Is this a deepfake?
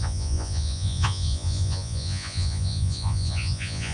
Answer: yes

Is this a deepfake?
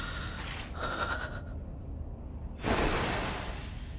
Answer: no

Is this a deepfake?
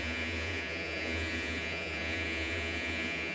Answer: yes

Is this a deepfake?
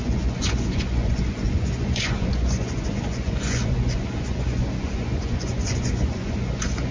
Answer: yes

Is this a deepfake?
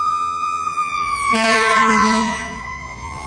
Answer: yes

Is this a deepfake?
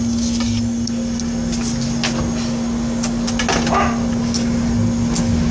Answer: no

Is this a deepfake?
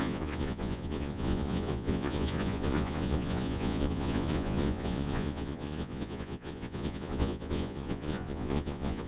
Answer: yes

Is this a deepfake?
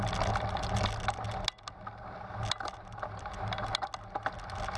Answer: no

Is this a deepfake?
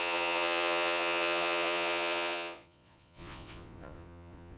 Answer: yes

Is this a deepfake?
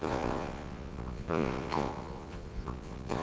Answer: yes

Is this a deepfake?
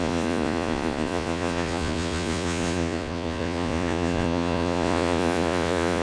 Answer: yes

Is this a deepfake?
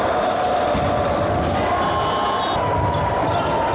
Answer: no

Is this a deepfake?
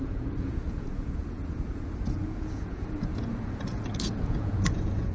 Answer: yes